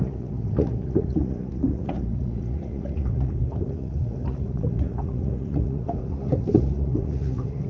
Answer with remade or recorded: remade